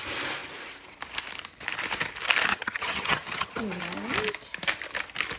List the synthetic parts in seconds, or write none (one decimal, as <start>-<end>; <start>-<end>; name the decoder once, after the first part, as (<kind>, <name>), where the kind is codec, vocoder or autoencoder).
2.5-3.8 (vocoder, HiFi-GAN)